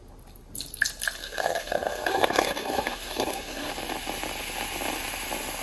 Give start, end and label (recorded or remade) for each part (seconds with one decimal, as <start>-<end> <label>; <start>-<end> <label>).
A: 0.0-1.2 recorded; 1.2-3.7 remade; 3.7-5.6 recorded